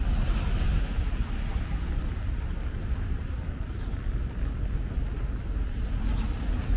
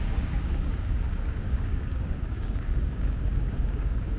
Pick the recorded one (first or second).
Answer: first